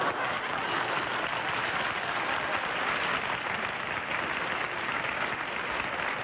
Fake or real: real